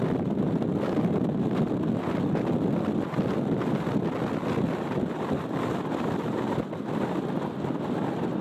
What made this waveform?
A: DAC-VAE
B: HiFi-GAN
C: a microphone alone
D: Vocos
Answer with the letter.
C